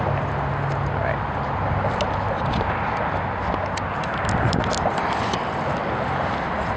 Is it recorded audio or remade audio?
recorded